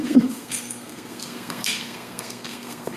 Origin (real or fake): fake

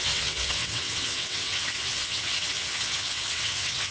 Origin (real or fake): fake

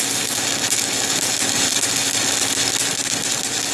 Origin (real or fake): real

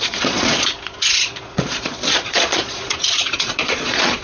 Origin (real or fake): fake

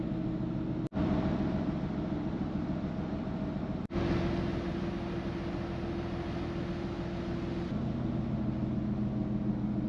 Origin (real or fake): real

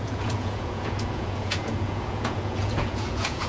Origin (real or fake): fake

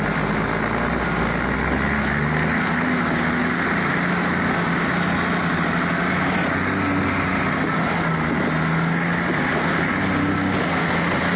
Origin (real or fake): real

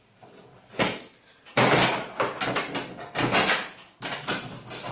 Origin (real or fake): real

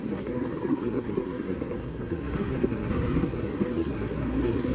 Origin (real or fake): fake